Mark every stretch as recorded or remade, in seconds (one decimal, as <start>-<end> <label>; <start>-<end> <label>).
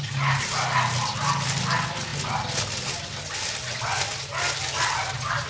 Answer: 0.0-5.5 recorded